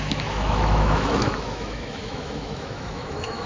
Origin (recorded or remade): remade